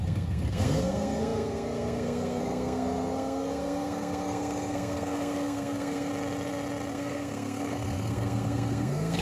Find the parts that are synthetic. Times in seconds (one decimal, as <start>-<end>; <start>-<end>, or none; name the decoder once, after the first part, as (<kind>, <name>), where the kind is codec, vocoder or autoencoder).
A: 0.0-6.1 (codec, SNAC); 6.9-9.2